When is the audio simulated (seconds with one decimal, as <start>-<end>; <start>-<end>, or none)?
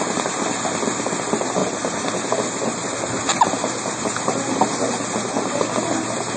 none